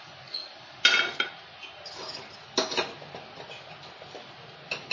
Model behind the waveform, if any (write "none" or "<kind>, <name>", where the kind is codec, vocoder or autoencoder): none